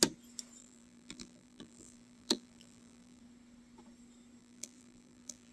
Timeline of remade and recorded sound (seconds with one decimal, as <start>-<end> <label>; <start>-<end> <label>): 0.0-0.6 recorded; 0.6-3.2 remade; 3.2-4.4 recorded; 4.4-5.5 remade